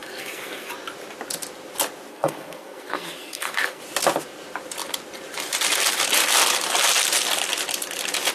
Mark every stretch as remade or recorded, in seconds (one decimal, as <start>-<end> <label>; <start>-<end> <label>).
0.0-0.7 remade; 0.7-2.1 recorded; 2.1-3.8 remade; 3.8-8.3 recorded